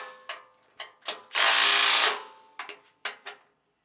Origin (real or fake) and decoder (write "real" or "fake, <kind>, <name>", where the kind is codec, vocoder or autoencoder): real